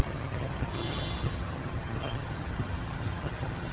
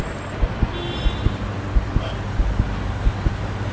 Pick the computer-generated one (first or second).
first